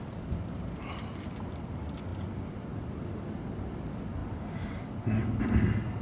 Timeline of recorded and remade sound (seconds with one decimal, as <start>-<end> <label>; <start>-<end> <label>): 0.0-4.2 recorded; 4.2-4.8 remade; 4.8-6.0 recorded